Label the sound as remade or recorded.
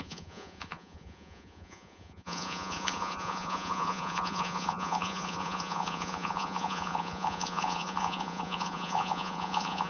remade